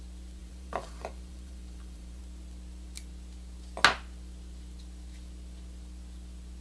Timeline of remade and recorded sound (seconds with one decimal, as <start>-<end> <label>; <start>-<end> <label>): 0.0-0.4 recorded; 0.4-2.2 remade; 2.2-6.6 recorded